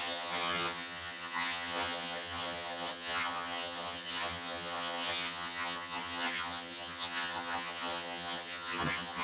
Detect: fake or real fake